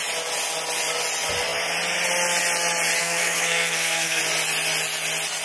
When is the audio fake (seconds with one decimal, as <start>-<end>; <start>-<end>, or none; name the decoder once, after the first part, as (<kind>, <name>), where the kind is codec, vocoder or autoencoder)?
3.0-4.2 (codec, SNAC)